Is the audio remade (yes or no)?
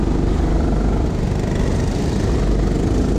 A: no